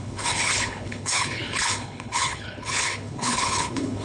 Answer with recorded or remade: remade